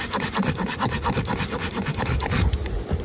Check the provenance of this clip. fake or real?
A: real